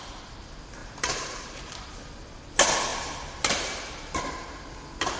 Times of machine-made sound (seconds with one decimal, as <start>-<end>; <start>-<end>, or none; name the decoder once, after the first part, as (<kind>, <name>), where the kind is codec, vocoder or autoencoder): 0.8-1.9 (vocoder, BigVGAN v2); 2.9-4.7